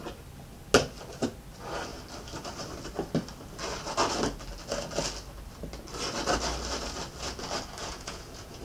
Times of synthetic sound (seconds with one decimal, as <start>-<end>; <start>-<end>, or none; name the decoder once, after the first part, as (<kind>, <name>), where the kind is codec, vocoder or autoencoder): 7.8-8.6 (vocoder, Vocos)